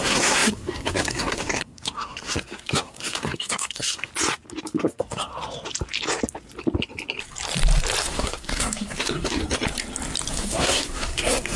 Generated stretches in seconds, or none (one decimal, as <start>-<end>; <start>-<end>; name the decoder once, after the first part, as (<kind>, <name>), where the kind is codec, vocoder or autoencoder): 0.0-4.1 (codec, SNAC); 4.8-5.3; 8.0-9.4; 10.3-11.6